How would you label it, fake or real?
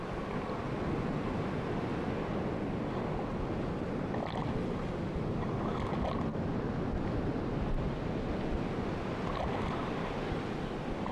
real